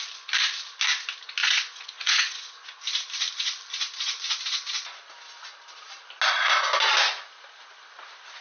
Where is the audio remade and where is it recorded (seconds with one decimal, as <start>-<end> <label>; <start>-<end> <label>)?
0.0-1.4 recorded; 1.4-2.8 remade; 2.8-8.4 recorded